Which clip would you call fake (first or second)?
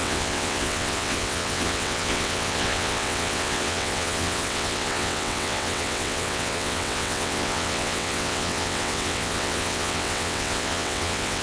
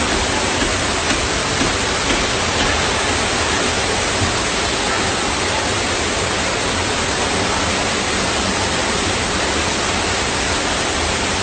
first